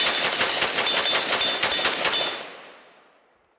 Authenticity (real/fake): fake